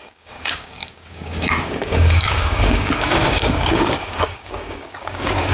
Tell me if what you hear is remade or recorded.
remade